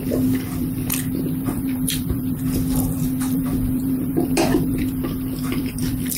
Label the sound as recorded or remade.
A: remade